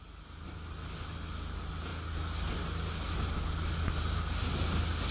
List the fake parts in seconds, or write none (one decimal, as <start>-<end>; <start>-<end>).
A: none